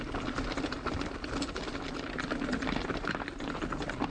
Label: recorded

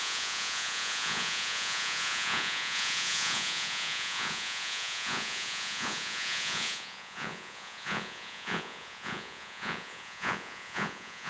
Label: remade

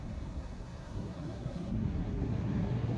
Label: remade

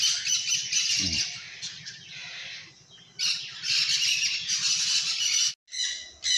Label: recorded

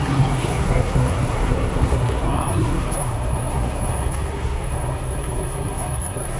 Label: remade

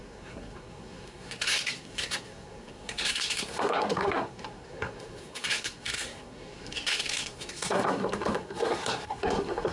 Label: remade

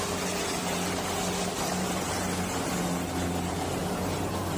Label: recorded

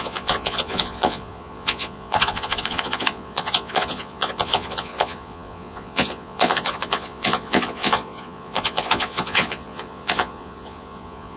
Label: remade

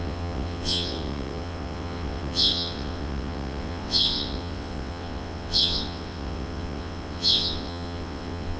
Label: remade